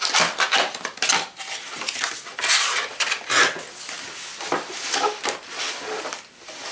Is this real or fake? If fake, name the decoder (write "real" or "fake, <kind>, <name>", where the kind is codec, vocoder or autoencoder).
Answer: real